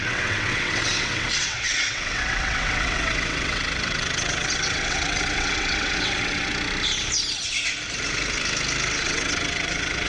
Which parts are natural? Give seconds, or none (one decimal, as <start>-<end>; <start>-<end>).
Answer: 6.5-9.0